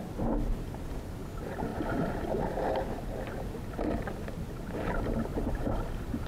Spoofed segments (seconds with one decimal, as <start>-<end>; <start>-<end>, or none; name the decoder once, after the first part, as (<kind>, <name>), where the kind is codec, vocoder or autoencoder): 1.7-4.0 (vocoder, BigVGAN v2); 5.3-6.3